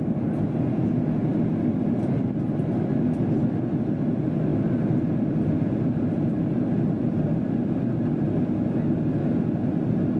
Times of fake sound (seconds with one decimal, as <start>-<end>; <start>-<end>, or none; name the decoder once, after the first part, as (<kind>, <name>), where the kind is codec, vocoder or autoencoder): none